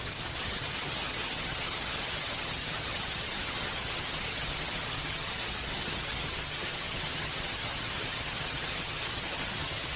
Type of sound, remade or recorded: remade